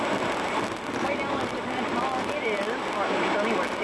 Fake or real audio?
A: real